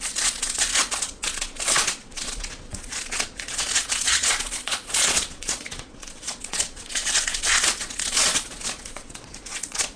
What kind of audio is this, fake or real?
fake